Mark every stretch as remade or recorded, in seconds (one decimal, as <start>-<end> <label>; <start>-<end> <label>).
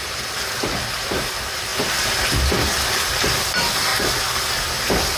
0.0-5.2 recorded